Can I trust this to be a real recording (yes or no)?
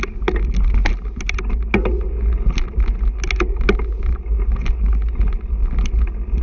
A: yes